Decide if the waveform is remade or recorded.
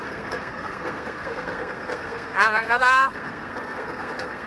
remade